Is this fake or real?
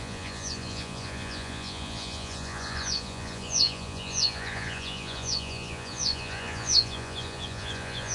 fake